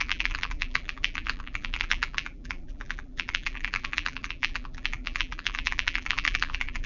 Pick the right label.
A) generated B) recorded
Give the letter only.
A